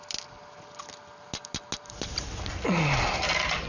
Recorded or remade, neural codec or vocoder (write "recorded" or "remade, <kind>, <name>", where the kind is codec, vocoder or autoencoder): recorded